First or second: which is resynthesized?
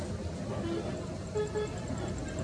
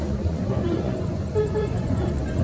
second